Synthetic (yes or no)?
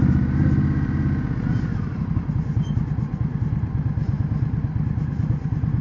no